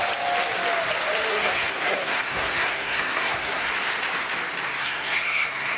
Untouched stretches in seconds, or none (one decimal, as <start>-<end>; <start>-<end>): 0.0-1.3; 3.7-4.8